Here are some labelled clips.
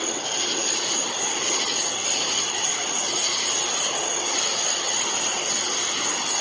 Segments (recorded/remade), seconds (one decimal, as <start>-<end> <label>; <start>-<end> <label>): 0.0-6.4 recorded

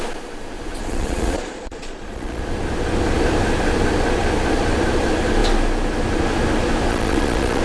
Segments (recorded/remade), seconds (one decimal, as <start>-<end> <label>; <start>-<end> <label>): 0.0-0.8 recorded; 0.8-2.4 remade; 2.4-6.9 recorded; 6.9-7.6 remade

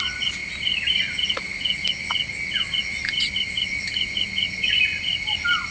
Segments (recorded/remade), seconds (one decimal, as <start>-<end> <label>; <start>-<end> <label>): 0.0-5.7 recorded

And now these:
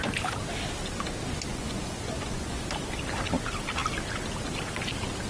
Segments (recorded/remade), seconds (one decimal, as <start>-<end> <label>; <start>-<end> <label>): 0.0-1.5 recorded; 1.5-2.6 remade; 2.6-5.3 recorded

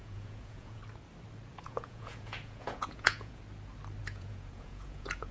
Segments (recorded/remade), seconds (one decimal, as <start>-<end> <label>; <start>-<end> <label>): 0.0-0.8 remade; 0.8-1.6 recorded; 1.6-3.4 remade; 3.4-4.0 recorded; 4.0-5.3 remade

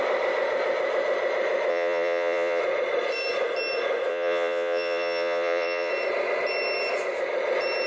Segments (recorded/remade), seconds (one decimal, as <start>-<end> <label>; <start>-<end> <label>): 0.0-1.7 recorded; 1.7-2.6 remade; 2.6-4.1 recorded; 4.1-5.9 remade; 5.9-7.9 recorded

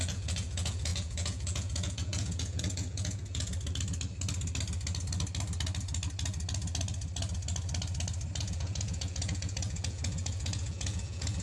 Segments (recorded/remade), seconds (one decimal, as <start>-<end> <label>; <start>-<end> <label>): 0.0-3.5 remade; 3.5-8.4 recorded; 8.4-11.4 remade